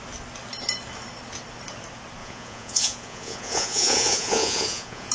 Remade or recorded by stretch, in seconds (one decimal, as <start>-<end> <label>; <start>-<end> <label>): 0.0-2.2 recorded; 2.2-5.1 remade